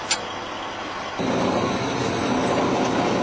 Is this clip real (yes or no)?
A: yes